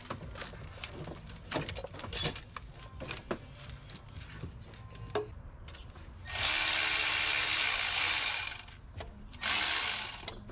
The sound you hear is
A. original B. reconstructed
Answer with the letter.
A